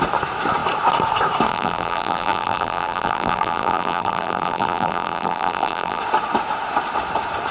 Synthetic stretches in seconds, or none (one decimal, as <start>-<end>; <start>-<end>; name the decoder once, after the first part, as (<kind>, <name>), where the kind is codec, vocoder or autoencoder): 1.5-6.0 (vocoder, BigVGAN v2)